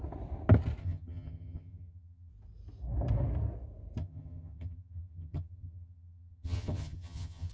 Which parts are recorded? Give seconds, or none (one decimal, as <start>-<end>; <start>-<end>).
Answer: 0.0-0.8; 2.3-4.0